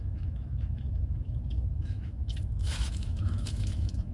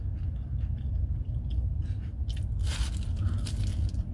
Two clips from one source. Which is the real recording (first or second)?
second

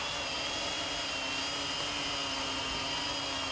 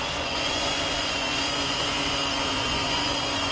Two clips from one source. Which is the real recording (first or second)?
first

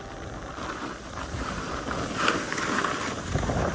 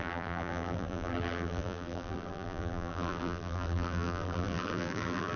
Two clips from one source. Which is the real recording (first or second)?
first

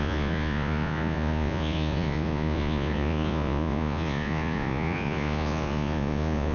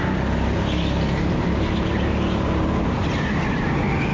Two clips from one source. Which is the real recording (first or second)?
second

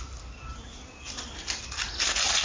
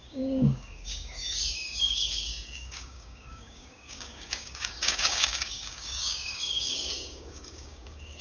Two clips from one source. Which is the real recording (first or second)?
first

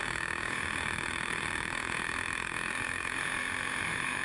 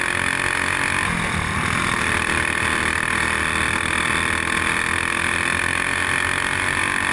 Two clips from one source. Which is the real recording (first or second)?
second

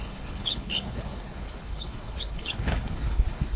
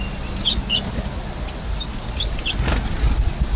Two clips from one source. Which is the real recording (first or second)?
second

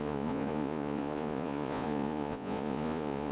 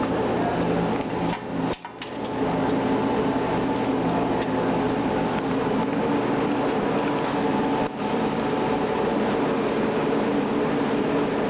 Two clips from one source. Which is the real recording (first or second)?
second